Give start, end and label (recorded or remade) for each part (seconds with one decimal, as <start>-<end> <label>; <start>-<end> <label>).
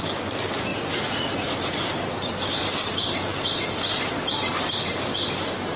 0.0-0.7 recorded; 0.7-1.5 remade; 1.5-5.8 recorded